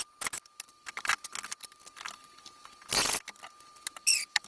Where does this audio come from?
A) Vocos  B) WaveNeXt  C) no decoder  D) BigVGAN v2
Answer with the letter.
C